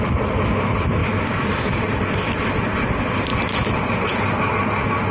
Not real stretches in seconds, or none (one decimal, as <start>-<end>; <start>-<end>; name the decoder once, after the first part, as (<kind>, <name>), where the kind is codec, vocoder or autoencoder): none